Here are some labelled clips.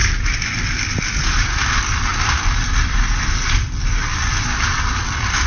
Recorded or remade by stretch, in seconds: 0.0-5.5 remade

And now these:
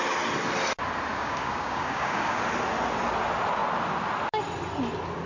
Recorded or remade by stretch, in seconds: 0.0-1.1 recorded; 1.1-2.4 remade; 2.4-5.3 recorded

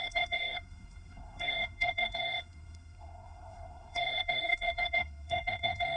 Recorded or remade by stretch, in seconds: 0.0-6.0 remade